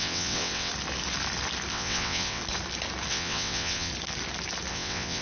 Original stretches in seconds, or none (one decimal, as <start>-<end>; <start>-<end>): 0.7-1.7; 2.4-3.1; 3.9-4.7

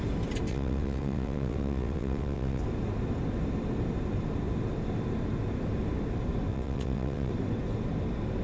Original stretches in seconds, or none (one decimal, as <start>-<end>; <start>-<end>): 0.0-0.5; 2.6-6.5; 7.3-8.4

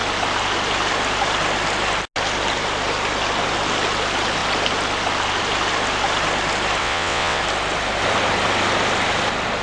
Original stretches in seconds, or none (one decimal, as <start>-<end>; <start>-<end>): 0.0-6.8; 7.4-9.6

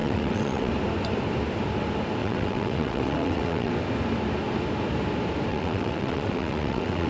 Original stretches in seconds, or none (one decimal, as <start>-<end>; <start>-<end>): 0.7-2.2; 3.7-5.5

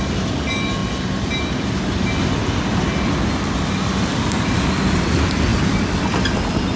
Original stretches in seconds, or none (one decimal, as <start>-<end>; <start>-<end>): 0.0-6.8

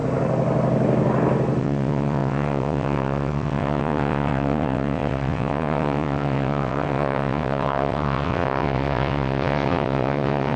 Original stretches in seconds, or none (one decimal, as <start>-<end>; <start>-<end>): 0.0-1.6